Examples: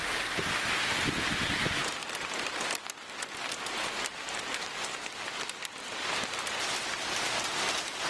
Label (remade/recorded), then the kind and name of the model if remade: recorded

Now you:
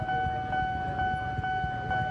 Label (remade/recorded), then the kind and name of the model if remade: recorded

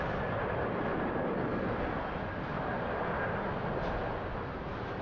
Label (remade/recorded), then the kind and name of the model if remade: recorded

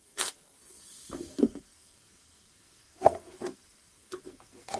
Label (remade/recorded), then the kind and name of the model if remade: remade, codec, SNAC